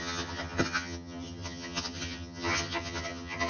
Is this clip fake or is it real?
fake